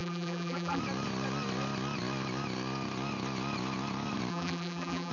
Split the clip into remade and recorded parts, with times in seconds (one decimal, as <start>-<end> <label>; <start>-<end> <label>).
0.0-0.8 remade; 0.8-4.3 recorded; 4.3-5.1 remade